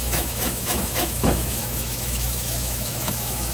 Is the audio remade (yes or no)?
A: yes